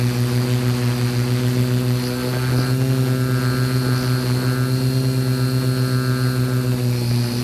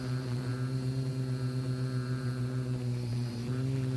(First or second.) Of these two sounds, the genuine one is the first